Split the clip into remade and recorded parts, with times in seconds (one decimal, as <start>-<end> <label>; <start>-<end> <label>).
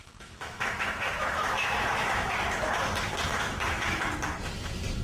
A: 0.0-2.9 remade; 2.9-3.3 recorded; 3.3-4.0 remade; 4.0-5.0 recorded